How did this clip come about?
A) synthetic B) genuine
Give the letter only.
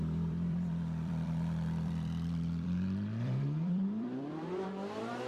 A